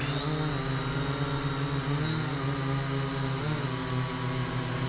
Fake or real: real